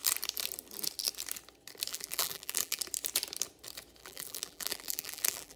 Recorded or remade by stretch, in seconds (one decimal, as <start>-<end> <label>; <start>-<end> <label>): 0.0-1.9 recorded; 1.9-2.8 remade; 2.8-4.0 recorded; 4.0-5.6 remade